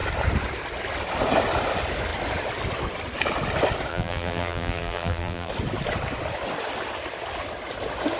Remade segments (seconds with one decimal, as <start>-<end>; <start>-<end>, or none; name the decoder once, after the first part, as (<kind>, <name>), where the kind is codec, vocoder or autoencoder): 3.9-5.5 (vocoder, BigVGAN v2)